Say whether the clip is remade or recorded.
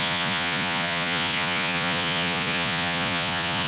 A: remade